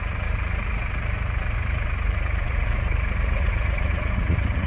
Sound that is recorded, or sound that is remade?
remade